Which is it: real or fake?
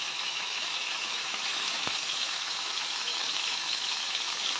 fake